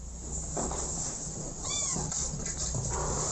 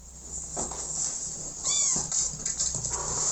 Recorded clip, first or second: second